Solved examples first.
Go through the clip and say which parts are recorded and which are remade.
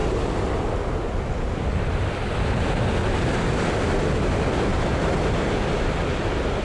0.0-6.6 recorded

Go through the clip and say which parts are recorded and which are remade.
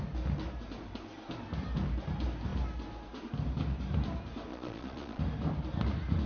0.0-4.5 recorded; 4.5-5.2 remade; 5.2-6.3 recorded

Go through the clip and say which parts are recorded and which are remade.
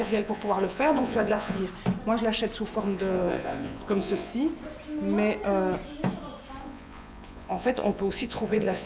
0.0-1.6 remade; 1.6-2.8 recorded; 2.8-4.3 remade; 4.3-6.6 recorded; 6.6-8.9 remade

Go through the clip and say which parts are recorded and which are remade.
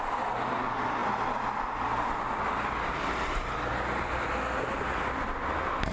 0.0-5.9 recorded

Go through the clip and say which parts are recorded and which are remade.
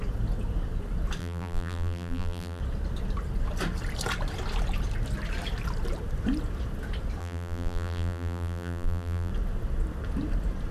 0.0-1.2 recorded; 1.2-2.6 remade; 2.6-7.2 recorded; 7.2-9.3 remade; 9.3-10.7 recorded